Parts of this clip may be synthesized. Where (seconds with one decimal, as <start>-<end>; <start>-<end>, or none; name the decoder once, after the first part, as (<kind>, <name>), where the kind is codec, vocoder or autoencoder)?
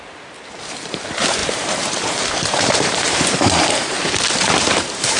0.0-5.2 (vocoder, BigVGAN v2)